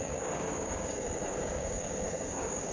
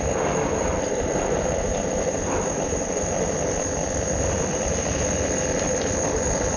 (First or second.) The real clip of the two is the second